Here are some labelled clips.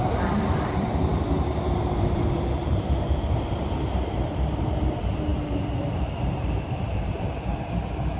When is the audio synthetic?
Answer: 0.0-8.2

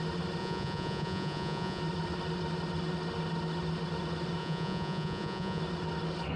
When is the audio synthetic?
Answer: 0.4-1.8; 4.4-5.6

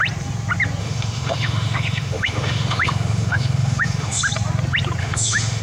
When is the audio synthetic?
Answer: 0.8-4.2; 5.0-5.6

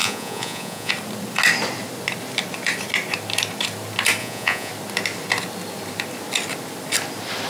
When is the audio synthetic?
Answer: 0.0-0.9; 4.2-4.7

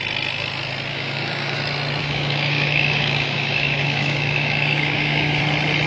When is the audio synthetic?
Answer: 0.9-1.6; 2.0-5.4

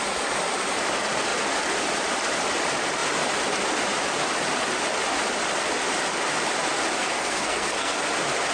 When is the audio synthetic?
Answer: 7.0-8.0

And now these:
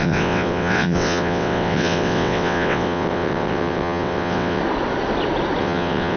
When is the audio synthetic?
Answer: 0.0-4.6; 5.6-6.2

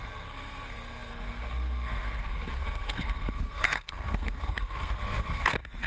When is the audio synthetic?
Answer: 0.0-5.9